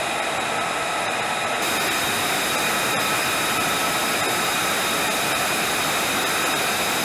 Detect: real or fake real